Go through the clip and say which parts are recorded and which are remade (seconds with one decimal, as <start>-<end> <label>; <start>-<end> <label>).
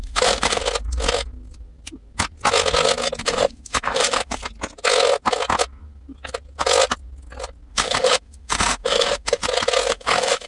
0.0-0.6 remade; 0.6-3.2 recorded; 3.2-4.4 remade; 4.4-7.7 recorded; 7.7-9.4 remade; 9.4-9.9 recorded; 9.9-10.5 remade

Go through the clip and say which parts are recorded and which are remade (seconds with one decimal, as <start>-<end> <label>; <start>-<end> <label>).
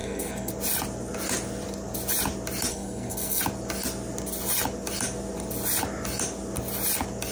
0.0-0.5 remade; 0.5-2.7 recorded; 2.7-3.4 remade; 3.4-7.3 recorded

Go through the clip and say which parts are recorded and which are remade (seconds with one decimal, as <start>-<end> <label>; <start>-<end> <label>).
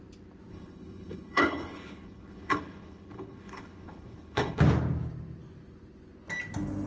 0.0-0.5 recorded; 0.5-4.6 remade; 4.6-6.9 recorded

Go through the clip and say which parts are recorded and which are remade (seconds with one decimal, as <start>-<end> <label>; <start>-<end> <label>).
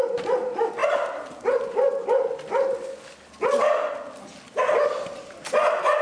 0.0-6.0 recorded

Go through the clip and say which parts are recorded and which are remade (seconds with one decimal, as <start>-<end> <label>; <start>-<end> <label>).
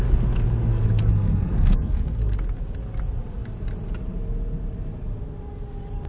0.0-0.7 recorded; 0.7-2.2 remade; 2.2-6.1 recorded